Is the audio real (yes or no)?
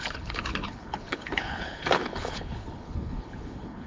no